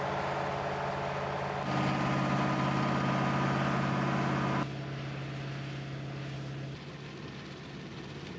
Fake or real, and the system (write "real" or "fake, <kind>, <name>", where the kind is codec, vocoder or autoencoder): real